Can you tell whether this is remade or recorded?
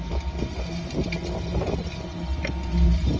recorded